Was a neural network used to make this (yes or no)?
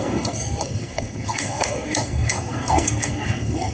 yes